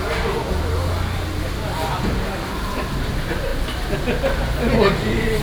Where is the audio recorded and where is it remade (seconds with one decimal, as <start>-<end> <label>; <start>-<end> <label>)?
0.0-2.5 recorded; 2.5-3.0 remade; 3.0-5.4 recorded